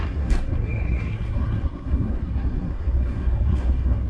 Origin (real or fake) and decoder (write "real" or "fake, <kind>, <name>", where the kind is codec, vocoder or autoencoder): fake, codec, SNAC